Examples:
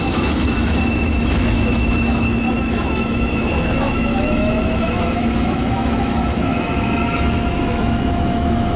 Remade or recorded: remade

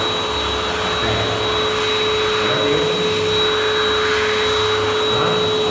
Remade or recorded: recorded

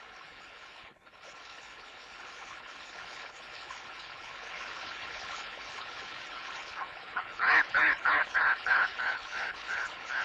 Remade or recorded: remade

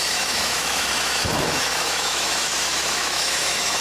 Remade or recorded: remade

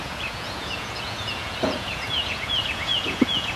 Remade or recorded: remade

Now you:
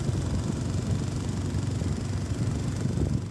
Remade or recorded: recorded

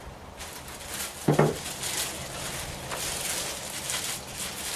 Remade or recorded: recorded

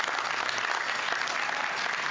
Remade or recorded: recorded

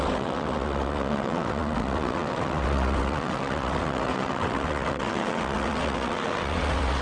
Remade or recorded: remade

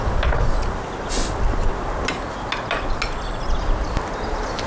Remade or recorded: recorded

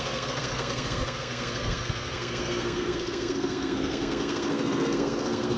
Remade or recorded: remade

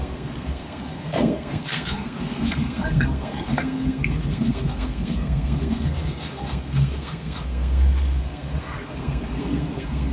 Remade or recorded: remade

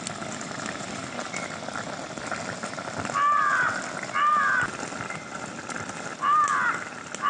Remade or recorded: recorded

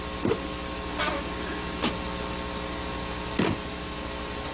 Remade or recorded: recorded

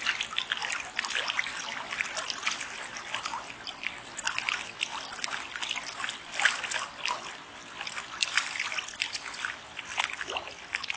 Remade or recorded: recorded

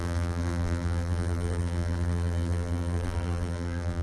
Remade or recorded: remade